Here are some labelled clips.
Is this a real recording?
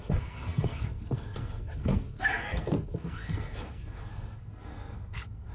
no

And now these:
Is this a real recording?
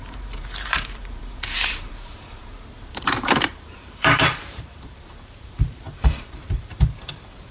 no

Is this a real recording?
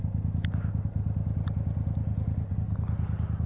yes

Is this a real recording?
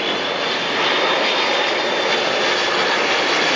yes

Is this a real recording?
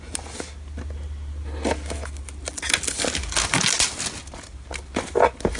yes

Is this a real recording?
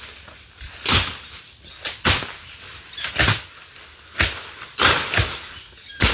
yes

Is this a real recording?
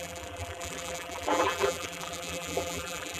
no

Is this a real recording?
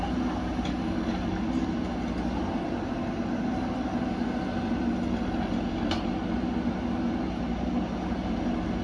yes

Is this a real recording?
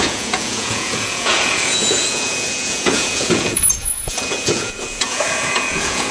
no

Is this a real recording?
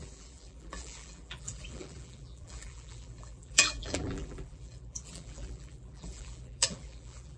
no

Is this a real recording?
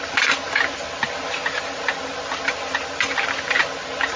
yes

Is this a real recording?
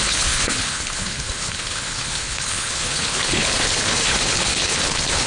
no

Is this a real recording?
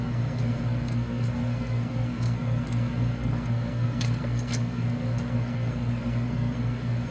no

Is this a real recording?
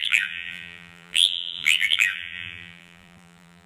no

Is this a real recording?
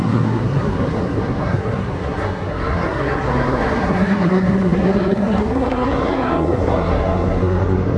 no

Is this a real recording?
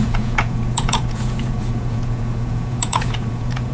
no